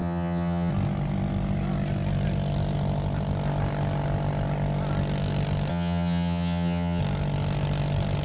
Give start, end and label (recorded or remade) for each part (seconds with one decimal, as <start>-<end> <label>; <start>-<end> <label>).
0.0-0.7 remade; 0.7-5.7 recorded; 5.7-7.0 remade; 7.0-8.2 recorded

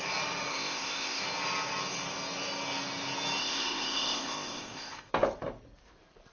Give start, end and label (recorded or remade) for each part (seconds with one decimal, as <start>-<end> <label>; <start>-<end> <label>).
0.0-0.5 recorded; 0.5-1.2 remade; 1.2-3.4 recorded; 3.4-5.1 remade; 5.1-6.3 recorded

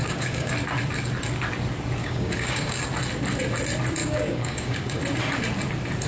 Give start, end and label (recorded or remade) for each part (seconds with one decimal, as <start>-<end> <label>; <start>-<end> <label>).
0.0-0.5 remade; 0.5-2.0 recorded; 2.0-2.8 remade; 2.8-4.0 recorded; 4.0-5.0 remade; 5.0-6.1 recorded

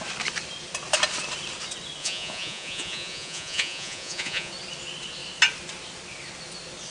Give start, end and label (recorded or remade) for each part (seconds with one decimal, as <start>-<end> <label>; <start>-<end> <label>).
0.0-2.0 recorded; 2.0-4.5 remade; 4.5-6.9 recorded

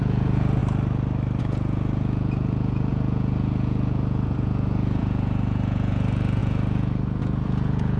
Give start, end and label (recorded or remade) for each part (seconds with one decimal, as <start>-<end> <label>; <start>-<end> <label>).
0.0-0.6 remade; 0.6-1.4 recorded; 1.4-8.0 remade